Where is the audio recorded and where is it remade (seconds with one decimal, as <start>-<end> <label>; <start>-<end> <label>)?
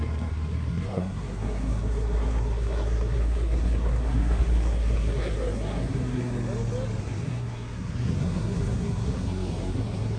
0.0-6.3 remade; 6.3-7.0 recorded; 7.0-10.2 remade